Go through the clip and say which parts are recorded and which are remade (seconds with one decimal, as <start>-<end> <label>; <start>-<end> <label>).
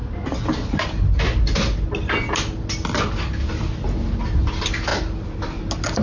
0.0-6.0 recorded